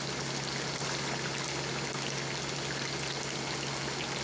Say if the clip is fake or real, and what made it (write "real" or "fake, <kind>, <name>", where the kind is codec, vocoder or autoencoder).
real